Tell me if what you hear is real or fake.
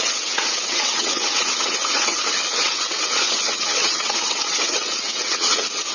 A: fake